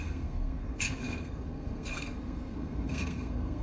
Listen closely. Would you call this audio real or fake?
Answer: fake